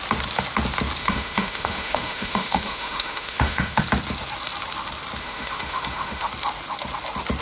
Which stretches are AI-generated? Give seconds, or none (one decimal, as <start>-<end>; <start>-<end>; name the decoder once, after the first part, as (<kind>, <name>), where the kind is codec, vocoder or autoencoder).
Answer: 1.0-3.8 (autoencoder, DAC-VAE); 5.2-6.3